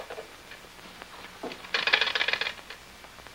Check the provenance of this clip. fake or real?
real